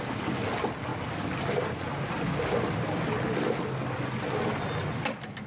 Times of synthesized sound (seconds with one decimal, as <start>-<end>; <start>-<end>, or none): none